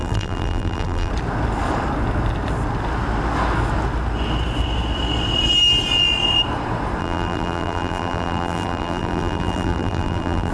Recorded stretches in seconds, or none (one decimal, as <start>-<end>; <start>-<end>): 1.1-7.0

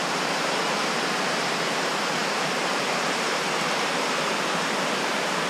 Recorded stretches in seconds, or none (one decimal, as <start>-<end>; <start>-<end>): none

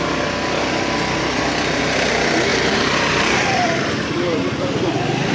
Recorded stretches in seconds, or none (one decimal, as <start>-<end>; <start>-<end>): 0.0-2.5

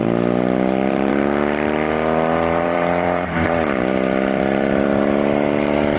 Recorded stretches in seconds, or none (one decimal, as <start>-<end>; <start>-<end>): none